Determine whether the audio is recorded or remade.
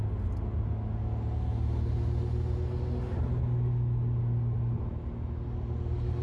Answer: recorded